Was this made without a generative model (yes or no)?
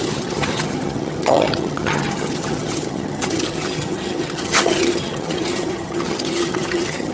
no